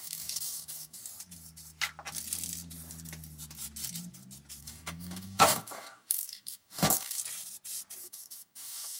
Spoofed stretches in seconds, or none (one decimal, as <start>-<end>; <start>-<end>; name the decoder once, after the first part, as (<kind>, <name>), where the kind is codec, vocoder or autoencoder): 0.0-1.0 (codec, DAC); 4.6-7.2; 8.0-9.0